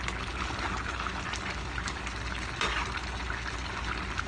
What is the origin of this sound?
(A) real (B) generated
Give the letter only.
A